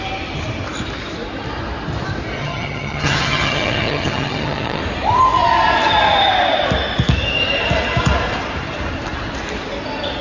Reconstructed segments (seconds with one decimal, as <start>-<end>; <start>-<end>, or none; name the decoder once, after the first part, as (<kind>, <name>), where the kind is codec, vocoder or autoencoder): 2.4-4.8 (vocoder, HiFi-GAN)